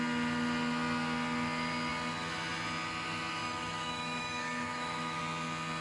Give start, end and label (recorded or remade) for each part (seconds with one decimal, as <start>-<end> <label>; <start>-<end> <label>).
0.0-3.4 recorded; 3.4-5.2 remade; 5.2-5.8 recorded